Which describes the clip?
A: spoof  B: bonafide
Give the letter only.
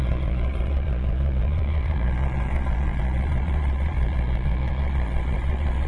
A